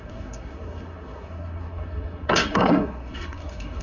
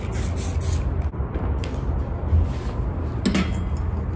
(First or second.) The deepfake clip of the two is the first